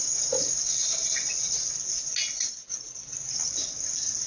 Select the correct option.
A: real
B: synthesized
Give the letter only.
A